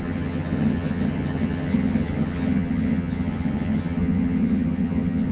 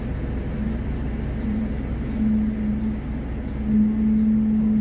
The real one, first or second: second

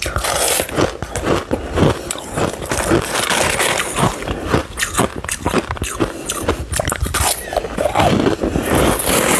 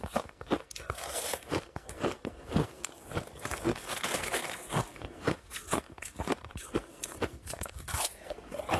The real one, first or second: first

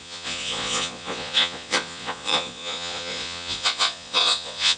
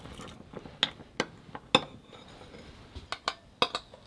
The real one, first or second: second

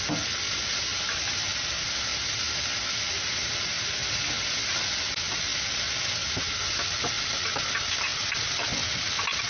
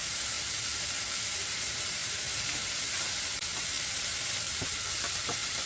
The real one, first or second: first